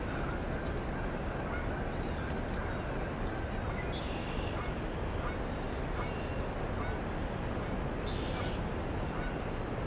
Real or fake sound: real